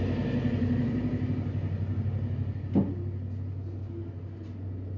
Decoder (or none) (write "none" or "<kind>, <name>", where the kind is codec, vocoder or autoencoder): none